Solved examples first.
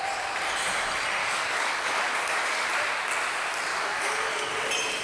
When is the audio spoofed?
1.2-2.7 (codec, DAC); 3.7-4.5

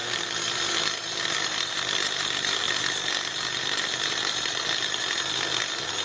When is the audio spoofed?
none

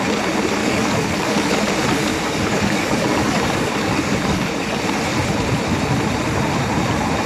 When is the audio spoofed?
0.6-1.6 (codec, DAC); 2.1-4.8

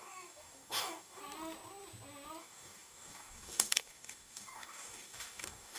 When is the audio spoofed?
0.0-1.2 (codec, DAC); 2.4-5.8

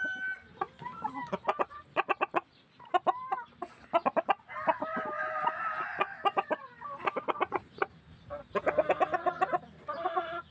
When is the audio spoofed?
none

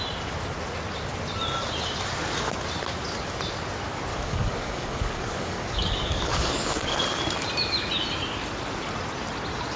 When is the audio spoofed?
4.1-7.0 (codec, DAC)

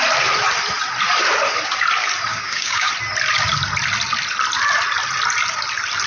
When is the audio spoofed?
2.3-2.9 (codec, DAC)